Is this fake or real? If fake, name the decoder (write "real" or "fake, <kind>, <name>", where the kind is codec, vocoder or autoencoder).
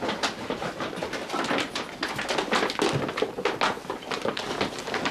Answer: real